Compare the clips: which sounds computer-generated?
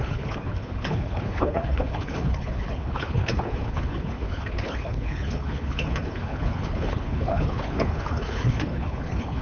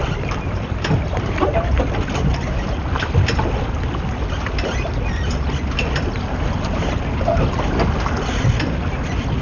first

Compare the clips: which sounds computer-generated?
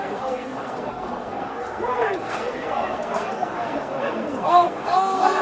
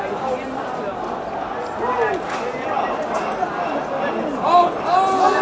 first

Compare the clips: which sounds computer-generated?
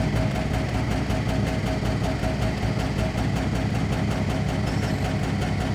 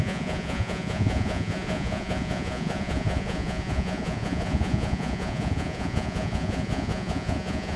second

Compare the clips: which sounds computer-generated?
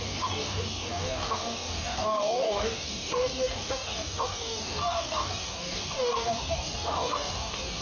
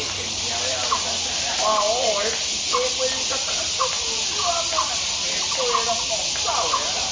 first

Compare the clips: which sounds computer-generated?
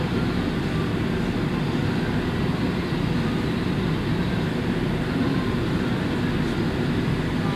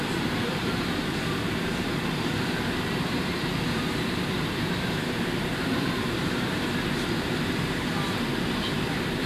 second